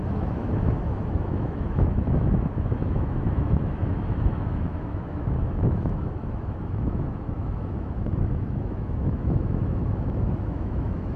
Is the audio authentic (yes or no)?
no